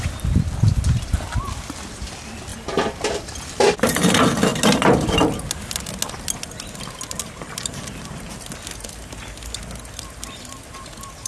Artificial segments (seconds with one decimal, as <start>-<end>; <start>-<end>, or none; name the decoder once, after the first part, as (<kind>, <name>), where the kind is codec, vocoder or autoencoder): 2.5-3.5 (vocoder, BigVGAN v2)